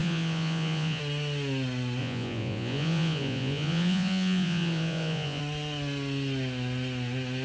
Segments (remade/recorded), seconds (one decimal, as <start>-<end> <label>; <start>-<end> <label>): 0.0-1.0 remade; 1.0-2.0 recorded; 2.0-5.4 remade; 5.4-7.4 recorded